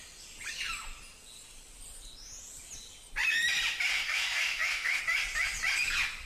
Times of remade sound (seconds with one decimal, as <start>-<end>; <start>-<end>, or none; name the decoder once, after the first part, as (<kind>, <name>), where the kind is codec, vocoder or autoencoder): 3.9-5.0 (autoencoder, DAC-VAE)